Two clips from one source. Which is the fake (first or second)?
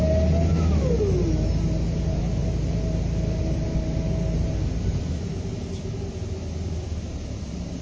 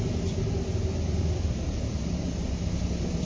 second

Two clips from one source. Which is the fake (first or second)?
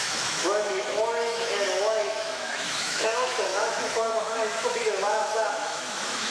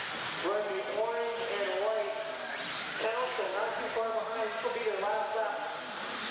first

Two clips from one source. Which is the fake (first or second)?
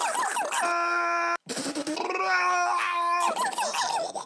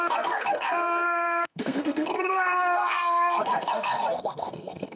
second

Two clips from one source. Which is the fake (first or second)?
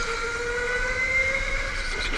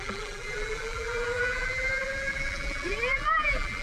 second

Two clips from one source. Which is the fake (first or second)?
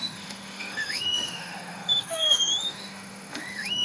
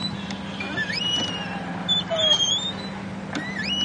first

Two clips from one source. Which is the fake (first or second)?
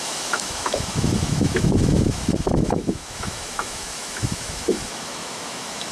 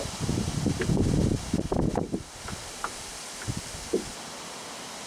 first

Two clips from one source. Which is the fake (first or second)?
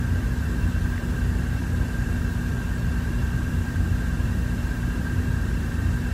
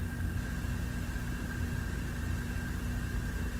first